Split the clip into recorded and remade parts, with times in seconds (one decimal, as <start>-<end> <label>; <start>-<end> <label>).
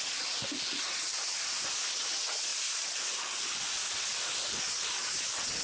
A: 0.0-5.6 recorded